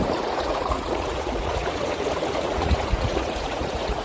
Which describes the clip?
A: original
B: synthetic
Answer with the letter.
B